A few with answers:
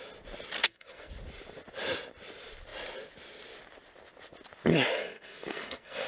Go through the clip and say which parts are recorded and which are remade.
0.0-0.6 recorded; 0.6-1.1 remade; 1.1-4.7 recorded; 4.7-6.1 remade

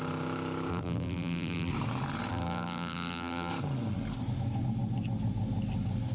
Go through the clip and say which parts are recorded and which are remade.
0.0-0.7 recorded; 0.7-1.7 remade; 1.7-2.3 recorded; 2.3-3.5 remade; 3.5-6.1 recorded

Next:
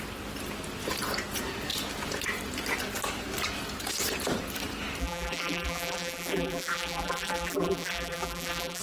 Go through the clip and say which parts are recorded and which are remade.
0.0-5.0 recorded; 5.0-8.8 remade

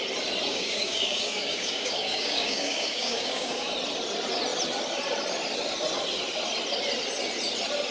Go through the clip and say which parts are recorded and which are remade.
0.0-0.5 recorded; 0.5-3.7 remade; 3.7-7.9 recorded

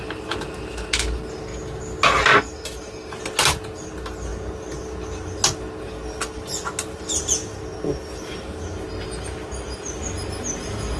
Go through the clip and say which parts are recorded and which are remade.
0.0-11.0 recorded

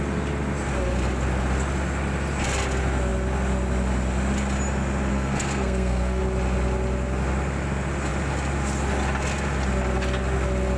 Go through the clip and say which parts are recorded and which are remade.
0.0-5.1 recorded; 5.1-6.2 remade; 6.2-10.8 recorded

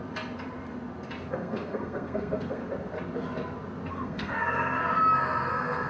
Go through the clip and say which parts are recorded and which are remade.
0.0-1.3 recorded; 1.3-2.6 remade; 2.6-3.9 recorded; 3.9-4.8 remade; 4.8-5.5 recorded; 5.5-5.9 remade

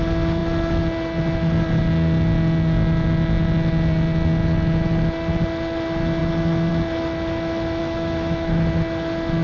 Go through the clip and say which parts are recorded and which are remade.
0.0-7.8 recorded; 7.8-8.5 remade; 8.5-9.4 recorded